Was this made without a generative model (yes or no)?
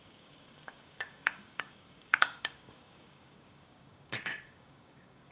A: no